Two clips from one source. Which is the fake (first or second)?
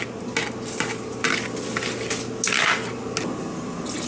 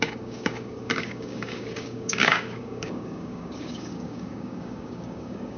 second